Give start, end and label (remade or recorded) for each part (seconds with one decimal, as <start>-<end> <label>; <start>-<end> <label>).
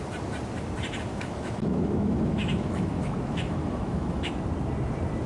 0.0-1.1 recorded; 1.1-4.3 remade; 4.3-5.3 recorded